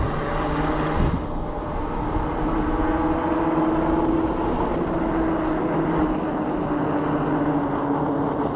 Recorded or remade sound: recorded